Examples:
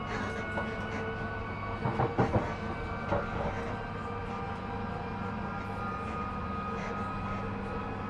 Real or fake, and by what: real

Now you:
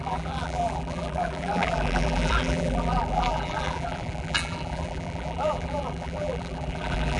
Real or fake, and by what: fake, vocoder, BigVGAN v2